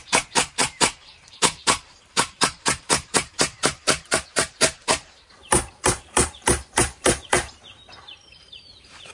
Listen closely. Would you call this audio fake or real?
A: fake